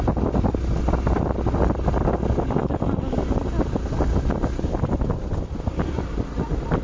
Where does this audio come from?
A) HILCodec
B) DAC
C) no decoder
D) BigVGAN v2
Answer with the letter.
C